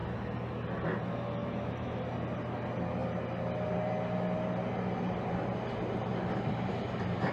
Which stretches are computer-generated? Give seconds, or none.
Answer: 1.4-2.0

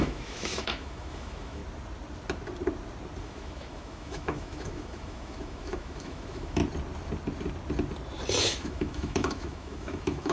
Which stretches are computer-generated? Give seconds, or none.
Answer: 0.0-1.6; 3.2-6.6; 8.4-10.3